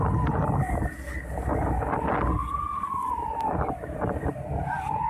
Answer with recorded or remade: recorded